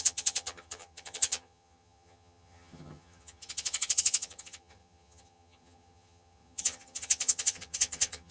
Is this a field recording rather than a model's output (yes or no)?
no